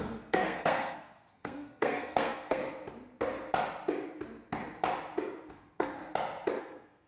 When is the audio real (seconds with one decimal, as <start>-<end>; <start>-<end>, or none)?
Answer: 2.6-5.5; 6.0-6.6